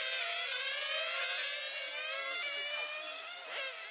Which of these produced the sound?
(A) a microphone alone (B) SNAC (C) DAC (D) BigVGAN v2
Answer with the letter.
A